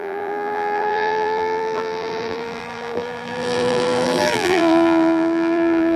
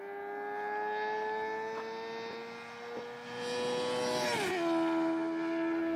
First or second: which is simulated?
first